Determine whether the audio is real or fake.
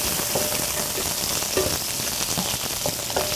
real